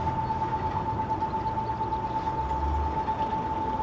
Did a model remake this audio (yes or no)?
no